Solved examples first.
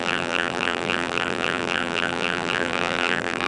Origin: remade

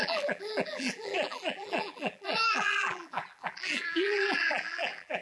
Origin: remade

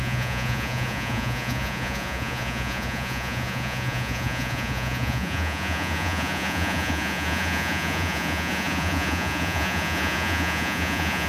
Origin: remade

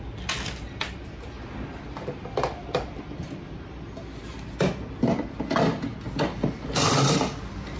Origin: recorded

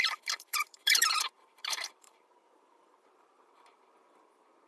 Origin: remade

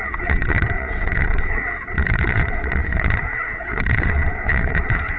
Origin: remade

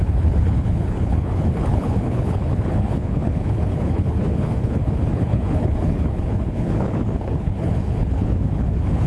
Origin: remade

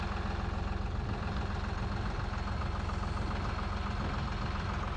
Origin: recorded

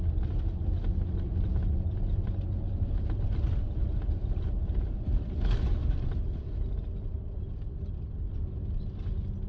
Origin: recorded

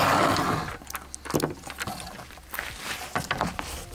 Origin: recorded